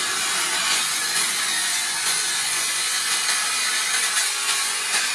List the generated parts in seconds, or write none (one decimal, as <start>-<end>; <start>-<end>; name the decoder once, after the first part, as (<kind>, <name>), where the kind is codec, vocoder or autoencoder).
0.6-3.2 (vocoder, Vocos); 4.2-5.1